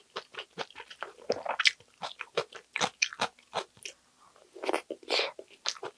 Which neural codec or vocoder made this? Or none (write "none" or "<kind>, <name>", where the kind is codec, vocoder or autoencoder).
none